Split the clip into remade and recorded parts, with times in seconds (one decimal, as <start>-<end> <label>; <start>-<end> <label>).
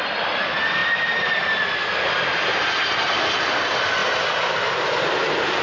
0.0-5.6 recorded